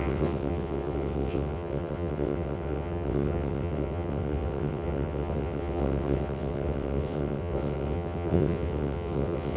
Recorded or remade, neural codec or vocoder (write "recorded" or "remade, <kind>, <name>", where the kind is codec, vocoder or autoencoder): remade, vocoder, WaveNeXt